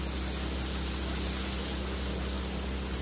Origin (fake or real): real